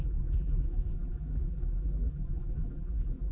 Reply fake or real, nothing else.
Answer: fake